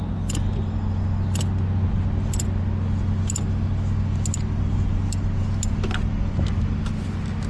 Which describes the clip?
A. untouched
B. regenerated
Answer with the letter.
A